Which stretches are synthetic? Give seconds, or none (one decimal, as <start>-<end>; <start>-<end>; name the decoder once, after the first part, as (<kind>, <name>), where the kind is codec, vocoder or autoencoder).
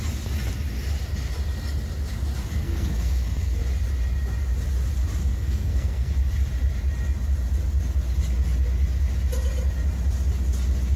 2.5-3.6 (codec, SNAC); 5.2-6.1